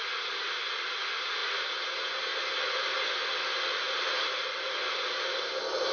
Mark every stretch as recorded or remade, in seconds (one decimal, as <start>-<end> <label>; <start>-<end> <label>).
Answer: 0.0-5.9 recorded